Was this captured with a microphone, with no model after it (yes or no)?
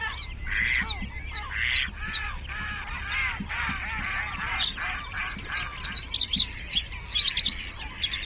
yes